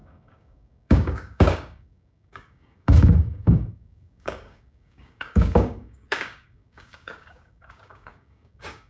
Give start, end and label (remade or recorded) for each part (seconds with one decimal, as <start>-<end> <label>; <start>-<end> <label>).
0.0-8.9 remade